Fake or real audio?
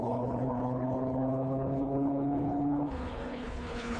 fake